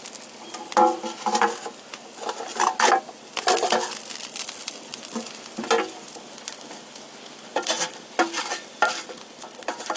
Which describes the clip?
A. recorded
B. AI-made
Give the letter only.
A